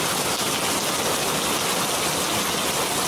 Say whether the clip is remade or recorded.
recorded